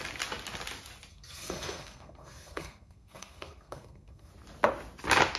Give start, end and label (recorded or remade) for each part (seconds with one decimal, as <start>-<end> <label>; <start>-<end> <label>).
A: 0.0-1.1 recorded; 1.1-4.3 remade; 4.3-5.4 recorded